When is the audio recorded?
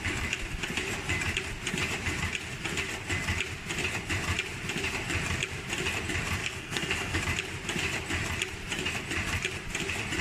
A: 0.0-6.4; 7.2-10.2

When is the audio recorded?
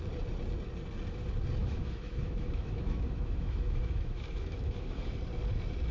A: 0.0-1.6; 5.1-5.9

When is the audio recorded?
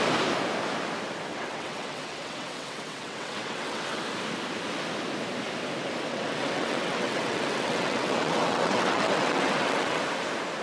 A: 0.0-1.3; 4.0-6.1; 10.0-10.6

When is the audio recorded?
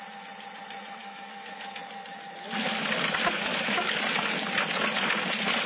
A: 0.0-1.0; 1.8-3.5; 4.0-5.7